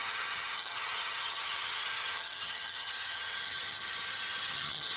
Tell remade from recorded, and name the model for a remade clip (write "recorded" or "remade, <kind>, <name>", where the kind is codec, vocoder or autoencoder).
remade, vocoder, HiFi-GAN